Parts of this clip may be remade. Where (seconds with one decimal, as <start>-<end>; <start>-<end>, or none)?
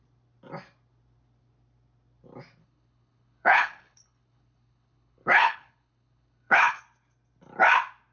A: 2.6-6.8